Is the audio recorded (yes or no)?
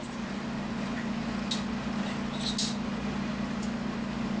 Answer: yes